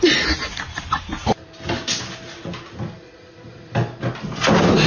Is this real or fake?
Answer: real